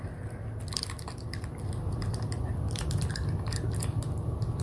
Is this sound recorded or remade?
recorded